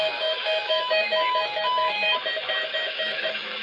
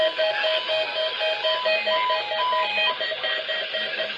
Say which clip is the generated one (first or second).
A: first